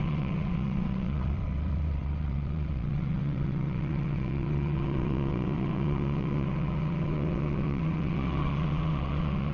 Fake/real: fake